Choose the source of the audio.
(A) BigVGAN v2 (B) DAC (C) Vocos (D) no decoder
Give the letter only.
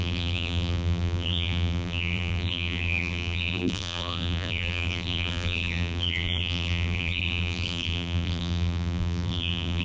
A